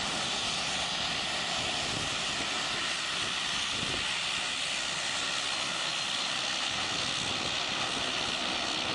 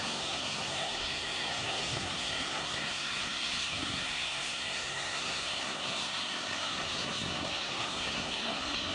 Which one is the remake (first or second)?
second